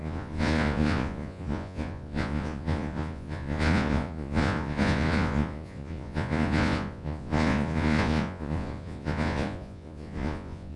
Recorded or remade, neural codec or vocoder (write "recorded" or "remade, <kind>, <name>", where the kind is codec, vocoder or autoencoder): remade, vocoder, Vocos